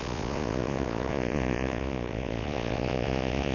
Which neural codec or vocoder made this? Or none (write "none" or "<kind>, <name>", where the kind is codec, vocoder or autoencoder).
vocoder, Vocos